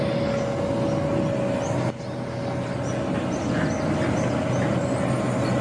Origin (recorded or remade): recorded